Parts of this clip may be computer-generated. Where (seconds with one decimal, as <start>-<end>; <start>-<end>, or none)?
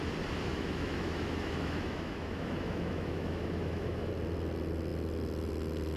0.5-4.1